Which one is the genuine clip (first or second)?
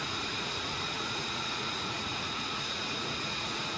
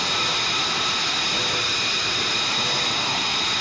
second